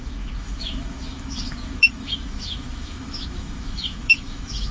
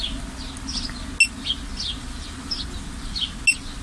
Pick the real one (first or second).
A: second